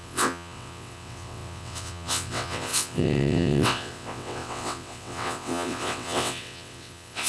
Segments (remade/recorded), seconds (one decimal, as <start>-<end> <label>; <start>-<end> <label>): 0.0-7.3 remade